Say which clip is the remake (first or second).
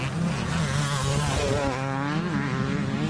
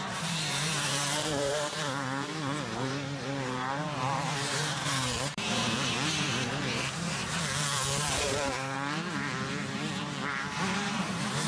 second